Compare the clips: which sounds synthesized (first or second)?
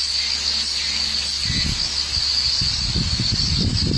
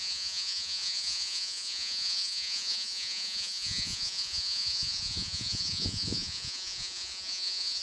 second